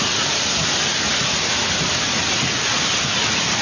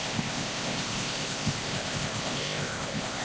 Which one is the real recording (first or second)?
first